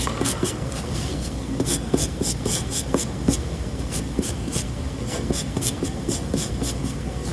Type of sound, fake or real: fake